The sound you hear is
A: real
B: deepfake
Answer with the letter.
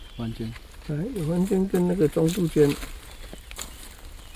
A